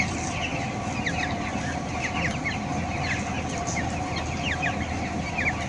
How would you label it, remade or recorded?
recorded